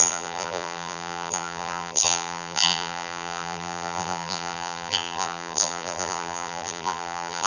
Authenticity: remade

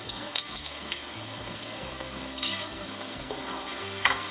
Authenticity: remade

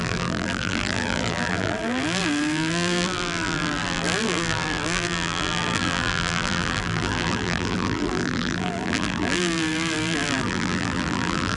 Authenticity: remade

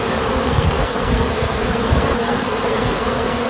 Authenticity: remade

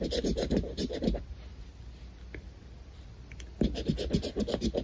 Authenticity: recorded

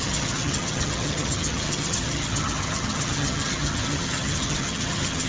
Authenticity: remade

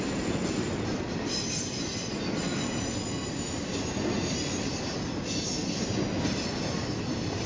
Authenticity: recorded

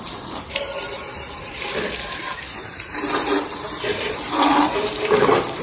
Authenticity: remade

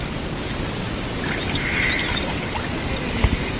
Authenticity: recorded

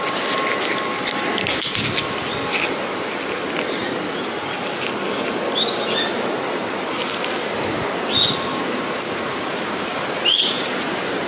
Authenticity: recorded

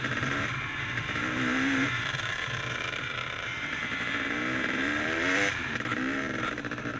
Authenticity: remade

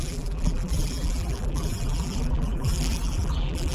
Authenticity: remade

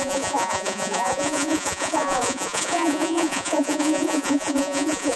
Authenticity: remade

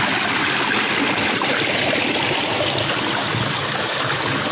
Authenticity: recorded